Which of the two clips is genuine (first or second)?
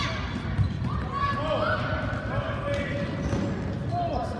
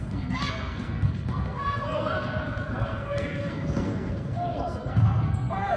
first